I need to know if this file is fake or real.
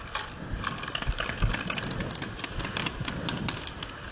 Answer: real